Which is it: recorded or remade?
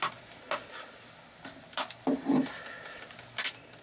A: recorded